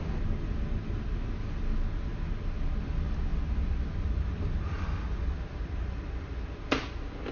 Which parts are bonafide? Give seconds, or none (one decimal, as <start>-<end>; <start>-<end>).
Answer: 0.0-7.3